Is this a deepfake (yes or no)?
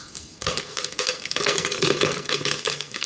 yes